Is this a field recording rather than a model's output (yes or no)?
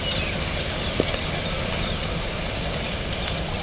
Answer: yes